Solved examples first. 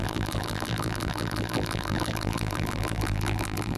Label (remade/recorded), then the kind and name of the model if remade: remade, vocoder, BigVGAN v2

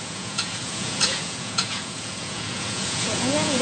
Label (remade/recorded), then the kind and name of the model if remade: remade, vocoder, Vocos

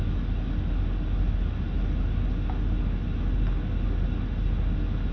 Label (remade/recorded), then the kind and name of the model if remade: recorded